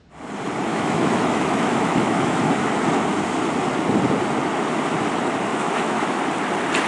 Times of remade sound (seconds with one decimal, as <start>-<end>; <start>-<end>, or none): 0.7-2.5; 5.5-6.2